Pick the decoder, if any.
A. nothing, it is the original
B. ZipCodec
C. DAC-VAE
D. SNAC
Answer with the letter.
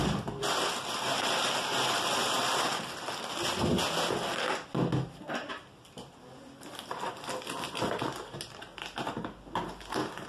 A